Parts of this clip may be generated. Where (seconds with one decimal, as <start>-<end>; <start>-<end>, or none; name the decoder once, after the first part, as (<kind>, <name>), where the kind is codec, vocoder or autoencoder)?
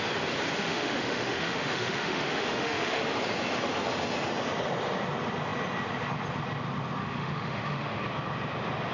0.6-3.0 (autoencoder, DAC-VAE); 7.0-8.0